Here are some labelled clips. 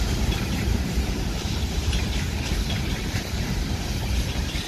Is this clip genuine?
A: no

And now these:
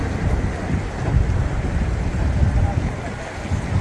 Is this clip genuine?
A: yes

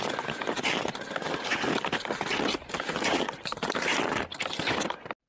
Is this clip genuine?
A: yes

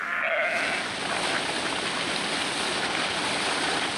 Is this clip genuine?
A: yes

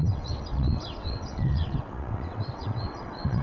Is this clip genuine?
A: no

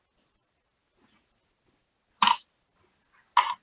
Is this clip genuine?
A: yes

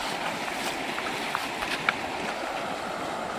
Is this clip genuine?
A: yes